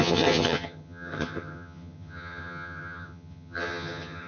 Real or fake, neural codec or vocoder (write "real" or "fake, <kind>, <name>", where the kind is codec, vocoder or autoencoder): fake, vocoder, HiFi-GAN